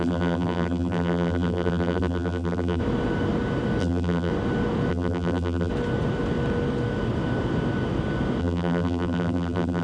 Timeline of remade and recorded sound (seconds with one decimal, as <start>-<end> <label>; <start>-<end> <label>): 0.0-2.8 remade; 2.8-3.8 recorded; 3.8-4.3 remade; 4.3-4.9 recorded; 4.9-5.7 remade; 5.7-8.4 recorded; 8.4-9.8 remade